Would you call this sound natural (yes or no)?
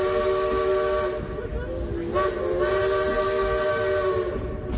yes